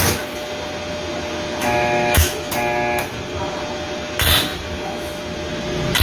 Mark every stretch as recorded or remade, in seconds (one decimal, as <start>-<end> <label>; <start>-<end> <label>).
0.0-1.6 recorded; 1.6-2.5 remade; 2.5-6.0 recorded